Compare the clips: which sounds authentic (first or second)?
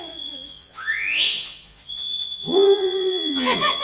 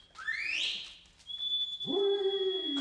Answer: second